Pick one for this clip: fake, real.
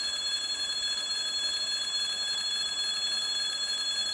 real